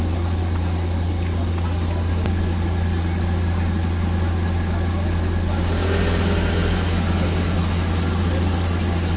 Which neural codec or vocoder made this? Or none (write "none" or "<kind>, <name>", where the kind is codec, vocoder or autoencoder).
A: none